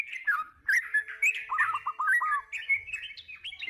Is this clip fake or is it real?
real